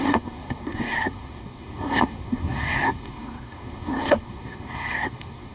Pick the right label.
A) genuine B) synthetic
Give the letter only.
B